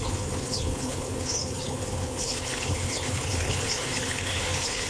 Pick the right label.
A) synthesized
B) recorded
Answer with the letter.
A